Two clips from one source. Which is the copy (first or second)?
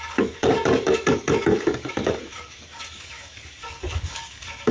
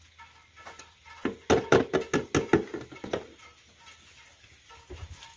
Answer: first